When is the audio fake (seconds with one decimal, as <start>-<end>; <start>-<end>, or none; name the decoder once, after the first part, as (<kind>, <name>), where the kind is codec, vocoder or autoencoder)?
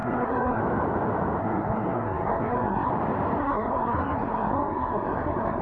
0.0-0.6 (codec, SNAC); 1.4-2.9; 3.4-5.6